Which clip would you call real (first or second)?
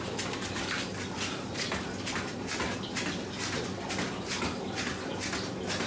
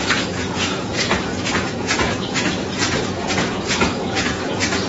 first